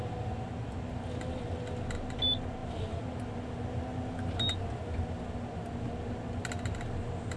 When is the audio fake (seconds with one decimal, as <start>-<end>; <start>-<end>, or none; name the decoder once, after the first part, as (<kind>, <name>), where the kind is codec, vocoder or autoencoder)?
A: none